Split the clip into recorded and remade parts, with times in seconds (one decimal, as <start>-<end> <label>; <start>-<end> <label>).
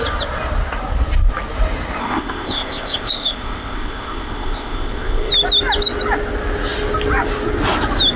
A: 0.0-2.0 recorded; 2.0-5.3 remade; 5.3-8.2 recorded